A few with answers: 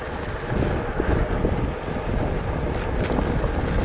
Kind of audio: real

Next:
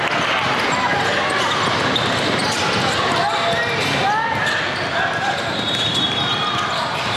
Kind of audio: real